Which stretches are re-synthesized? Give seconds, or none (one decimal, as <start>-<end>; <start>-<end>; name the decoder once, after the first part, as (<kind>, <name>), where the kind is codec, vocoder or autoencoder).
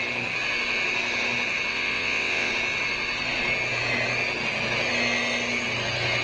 1.7-2.5 (vocoder, WaveNeXt)